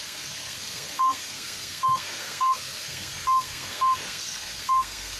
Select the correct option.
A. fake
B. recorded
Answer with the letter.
A